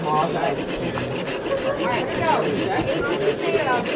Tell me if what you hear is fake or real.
real